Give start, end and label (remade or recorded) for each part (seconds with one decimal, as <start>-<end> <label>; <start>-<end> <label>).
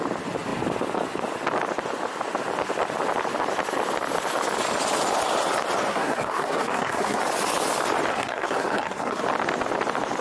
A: 0.0-5.9 recorded; 5.9-7.2 remade; 7.2-8.1 recorded; 8.1-9.2 remade; 9.2-10.2 recorded